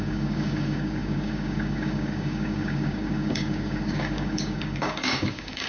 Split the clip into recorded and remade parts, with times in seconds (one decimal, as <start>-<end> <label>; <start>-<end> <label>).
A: 0.0-5.7 remade